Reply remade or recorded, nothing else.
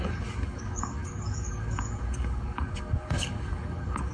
remade